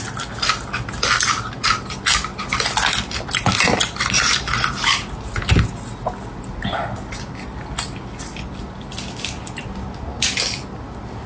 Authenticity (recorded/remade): recorded